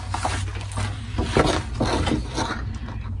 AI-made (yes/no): no